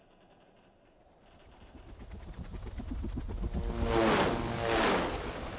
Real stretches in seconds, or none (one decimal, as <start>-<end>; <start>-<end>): 0.0-5.6